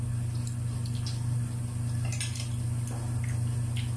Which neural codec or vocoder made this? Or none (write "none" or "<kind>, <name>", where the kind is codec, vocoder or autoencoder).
none